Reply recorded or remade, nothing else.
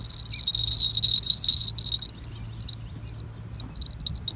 recorded